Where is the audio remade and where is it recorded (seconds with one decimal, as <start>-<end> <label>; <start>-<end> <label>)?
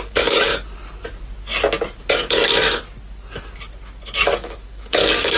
0.0-0.5 remade; 0.5-2.1 recorded; 2.1-2.5 remade; 2.5-4.2 recorded; 4.2-5.4 remade